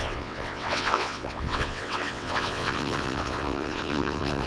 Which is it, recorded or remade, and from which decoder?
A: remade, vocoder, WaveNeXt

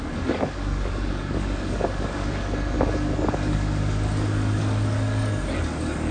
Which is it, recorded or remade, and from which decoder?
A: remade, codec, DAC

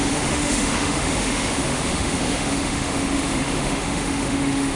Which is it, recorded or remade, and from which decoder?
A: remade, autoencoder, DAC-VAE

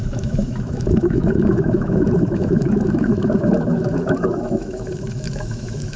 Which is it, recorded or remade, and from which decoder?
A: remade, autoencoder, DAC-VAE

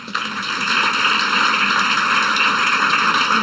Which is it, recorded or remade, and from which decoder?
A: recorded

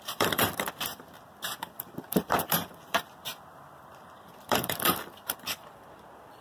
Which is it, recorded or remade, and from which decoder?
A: remade, vocoder, BigVGAN v2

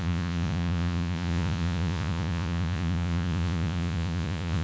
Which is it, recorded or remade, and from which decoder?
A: remade, vocoder, Vocos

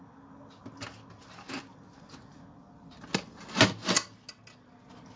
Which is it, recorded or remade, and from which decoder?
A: recorded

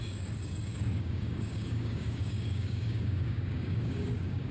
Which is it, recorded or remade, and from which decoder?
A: remade, codec, DAC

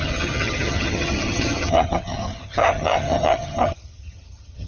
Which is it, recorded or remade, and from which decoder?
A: remade, vocoder, HiFi-GAN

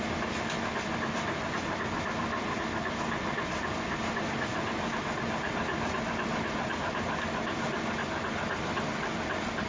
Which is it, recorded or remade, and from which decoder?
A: recorded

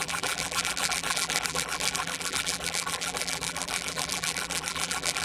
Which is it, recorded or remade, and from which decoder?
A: remade, vocoder, BigVGAN v2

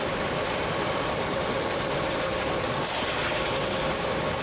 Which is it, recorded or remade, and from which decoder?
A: recorded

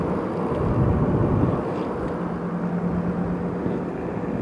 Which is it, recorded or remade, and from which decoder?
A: recorded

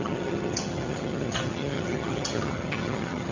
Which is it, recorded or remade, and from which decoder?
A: remade, vocoder, HiFi-GAN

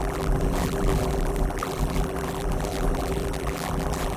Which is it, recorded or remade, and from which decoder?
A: remade, vocoder, BigVGAN v2